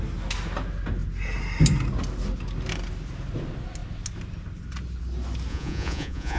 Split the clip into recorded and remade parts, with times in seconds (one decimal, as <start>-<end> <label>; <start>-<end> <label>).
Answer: 0.0-5.5 recorded; 5.5-6.4 remade